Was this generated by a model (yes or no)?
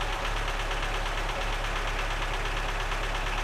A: no